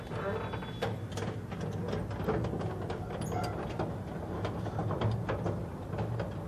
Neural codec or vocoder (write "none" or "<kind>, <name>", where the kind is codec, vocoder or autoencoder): none